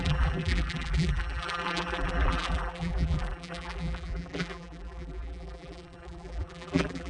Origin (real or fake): fake